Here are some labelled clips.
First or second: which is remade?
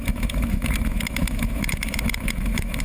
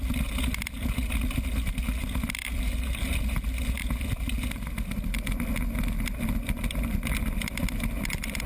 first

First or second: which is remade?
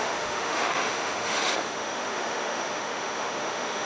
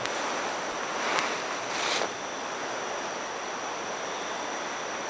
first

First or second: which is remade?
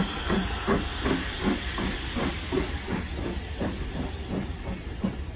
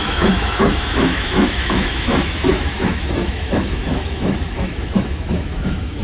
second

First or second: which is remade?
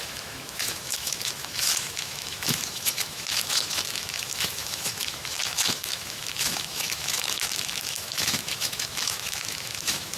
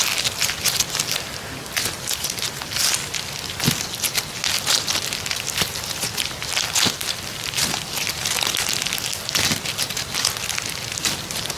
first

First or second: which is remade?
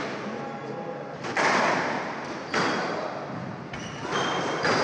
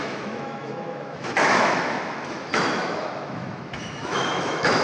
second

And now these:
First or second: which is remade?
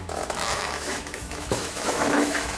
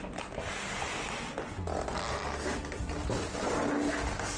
first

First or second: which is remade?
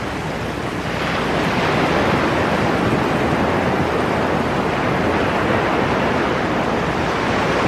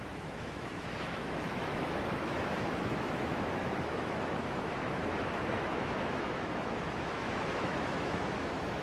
second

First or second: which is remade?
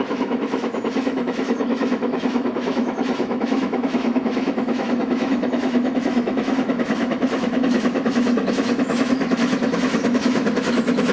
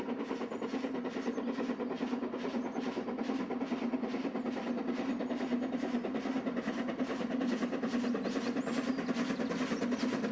first